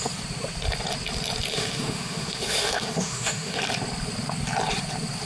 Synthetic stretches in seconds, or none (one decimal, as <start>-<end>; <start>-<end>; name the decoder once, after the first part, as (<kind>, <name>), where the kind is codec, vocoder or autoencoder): 1.5-3.6 (autoencoder, DAC-VAE)